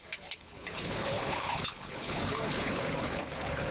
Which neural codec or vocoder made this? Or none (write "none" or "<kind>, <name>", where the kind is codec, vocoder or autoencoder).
codec, HILCodec